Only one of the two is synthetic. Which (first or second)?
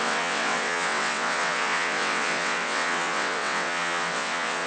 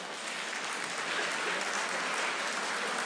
first